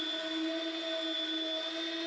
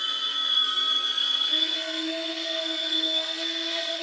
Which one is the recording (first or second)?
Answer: first